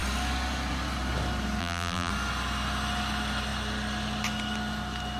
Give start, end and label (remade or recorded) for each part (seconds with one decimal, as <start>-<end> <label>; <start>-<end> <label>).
0.0-1.6 recorded; 1.6-2.1 remade; 2.1-5.2 recorded